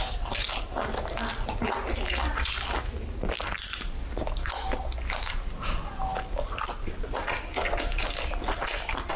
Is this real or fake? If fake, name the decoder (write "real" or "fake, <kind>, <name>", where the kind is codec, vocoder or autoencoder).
real